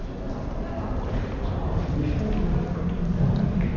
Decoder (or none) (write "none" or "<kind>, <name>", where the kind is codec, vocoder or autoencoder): none